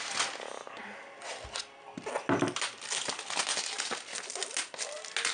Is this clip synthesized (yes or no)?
no